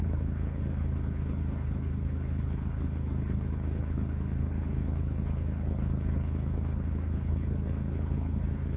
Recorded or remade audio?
remade